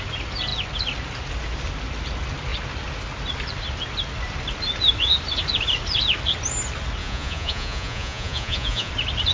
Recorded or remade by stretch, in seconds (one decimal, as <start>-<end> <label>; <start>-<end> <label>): 0.0-7.0 recorded; 7.0-8.9 remade; 8.9-9.3 recorded